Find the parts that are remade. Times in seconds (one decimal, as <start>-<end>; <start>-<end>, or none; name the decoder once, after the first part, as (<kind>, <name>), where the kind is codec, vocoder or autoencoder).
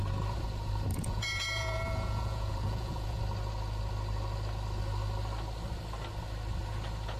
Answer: 0.9-3.2 (vocoder, Vocos)